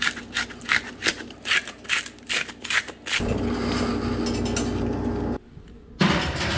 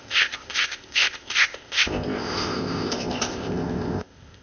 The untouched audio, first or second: first